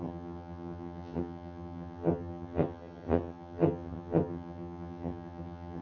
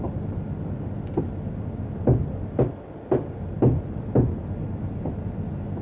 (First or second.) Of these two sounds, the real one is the second